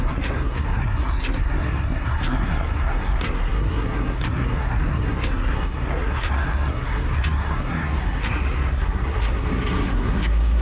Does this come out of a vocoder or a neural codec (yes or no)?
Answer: yes